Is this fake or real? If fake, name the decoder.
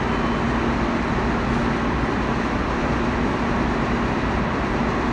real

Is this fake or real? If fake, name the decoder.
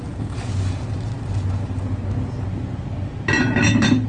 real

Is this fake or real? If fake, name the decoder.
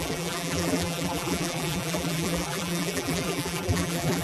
fake, vocoder, BigVGAN v2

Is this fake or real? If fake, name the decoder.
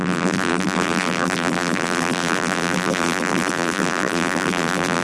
fake, vocoder, BigVGAN v2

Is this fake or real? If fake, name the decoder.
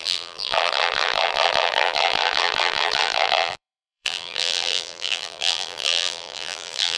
fake, vocoder, BigVGAN v2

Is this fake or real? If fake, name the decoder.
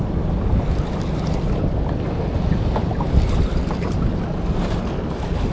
real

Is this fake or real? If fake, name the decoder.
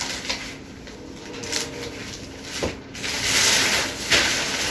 real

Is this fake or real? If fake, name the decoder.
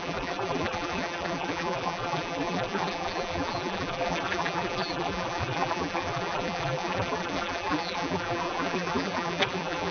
fake, vocoder, BigVGAN v2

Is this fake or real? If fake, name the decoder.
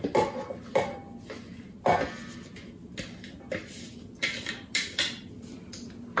real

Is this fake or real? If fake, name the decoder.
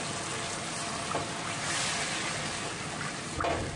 real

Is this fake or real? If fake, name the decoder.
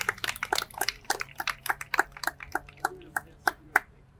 fake, vocoder, BigVGAN v2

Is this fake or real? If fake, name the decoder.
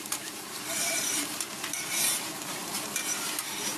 fake, vocoder, BigVGAN v2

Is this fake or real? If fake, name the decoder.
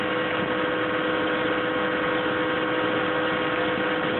real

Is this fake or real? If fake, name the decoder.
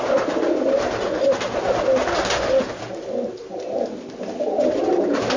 real